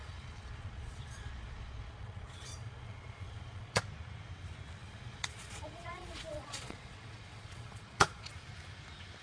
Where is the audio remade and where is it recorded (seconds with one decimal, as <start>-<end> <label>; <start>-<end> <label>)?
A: 0.0-3.8 remade; 3.8-4.8 recorded; 4.8-8.3 remade; 8.3-9.2 recorded